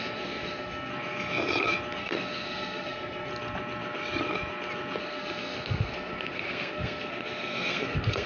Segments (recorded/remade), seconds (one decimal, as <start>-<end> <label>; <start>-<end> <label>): 0.0-0.9 remade; 0.9-2.0 recorded; 2.0-3.3 remade; 3.3-5.0 recorded; 5.0-8.3 remade